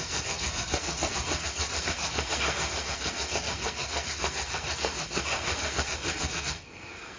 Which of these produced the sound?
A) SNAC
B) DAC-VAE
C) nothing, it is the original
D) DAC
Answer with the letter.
A